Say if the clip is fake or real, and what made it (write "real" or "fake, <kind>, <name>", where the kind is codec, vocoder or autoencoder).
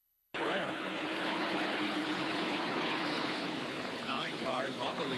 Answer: fake, codec, HILCodec